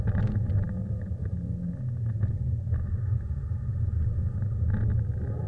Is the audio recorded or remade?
recorded